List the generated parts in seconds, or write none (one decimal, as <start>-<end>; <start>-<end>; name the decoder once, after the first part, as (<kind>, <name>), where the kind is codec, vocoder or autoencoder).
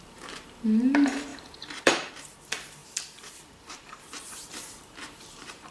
0.0-2.8 (vocoder, BigVGAN v2); 3.4-5.7